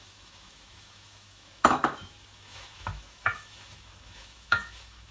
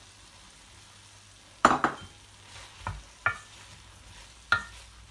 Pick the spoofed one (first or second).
first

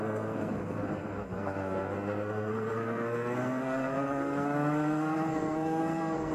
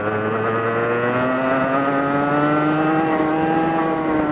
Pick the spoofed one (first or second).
first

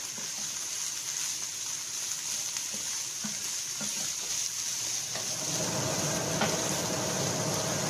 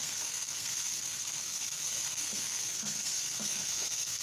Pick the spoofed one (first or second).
second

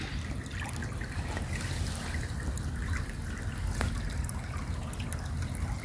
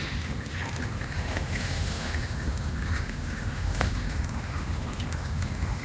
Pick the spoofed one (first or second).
second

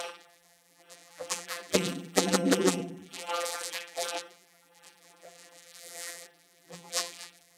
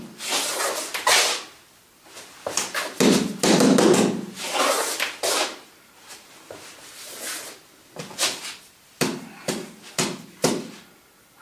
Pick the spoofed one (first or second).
first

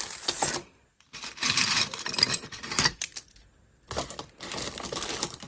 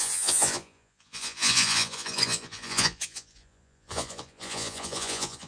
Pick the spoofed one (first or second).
second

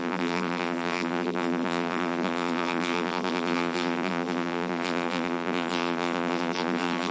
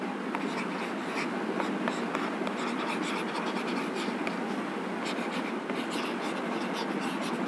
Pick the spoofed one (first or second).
first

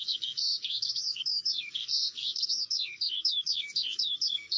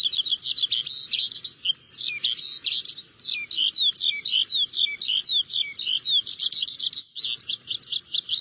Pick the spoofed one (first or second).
first